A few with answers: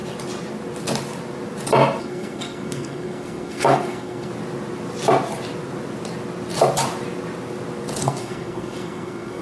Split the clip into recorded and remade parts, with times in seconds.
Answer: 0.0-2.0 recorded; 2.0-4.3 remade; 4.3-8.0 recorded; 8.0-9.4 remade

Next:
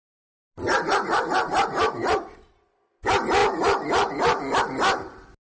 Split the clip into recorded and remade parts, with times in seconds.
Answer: 0.0-5.6 recorded

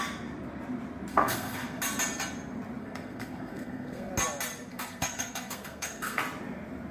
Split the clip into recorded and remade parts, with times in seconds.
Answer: 0.0-1.1 recorded; 1.1-1.8 remade; 1.8-2.8 recorded; 2.8-4.1 remade; 4.1-4.7 recorded; 4.7-6.2 remade; 6.2-6.9 recorded

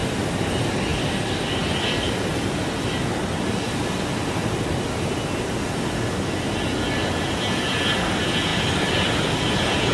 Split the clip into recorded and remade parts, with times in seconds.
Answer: 0.0-0.5 remade; 0.5-0.9 recorded; 0.9-4.9 remade; 4.9-8.5 recorded; 8.5-9.5 remade; 9.5-9.9 recorded

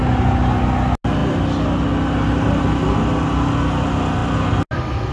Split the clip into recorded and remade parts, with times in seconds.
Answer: 0.0-5.1 recorded

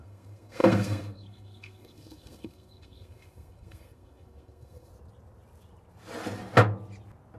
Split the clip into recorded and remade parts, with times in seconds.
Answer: 0.0-4.9 remade; 4.9-7.4 recorded